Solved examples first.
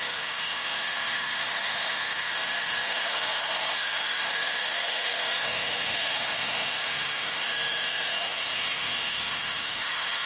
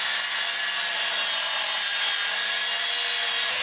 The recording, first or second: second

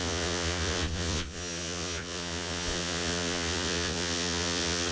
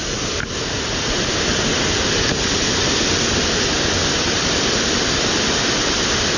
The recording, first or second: second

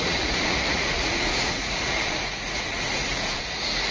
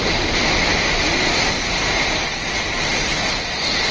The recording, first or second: second